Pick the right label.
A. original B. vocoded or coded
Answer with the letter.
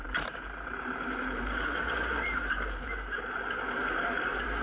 B